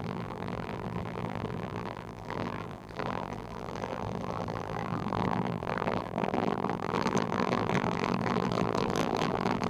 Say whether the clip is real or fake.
fake